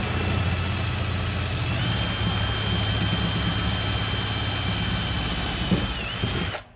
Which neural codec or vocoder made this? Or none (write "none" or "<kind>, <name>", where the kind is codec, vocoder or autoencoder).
none